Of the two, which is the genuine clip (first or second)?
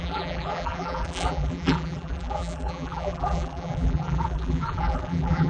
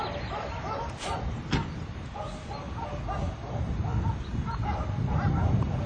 second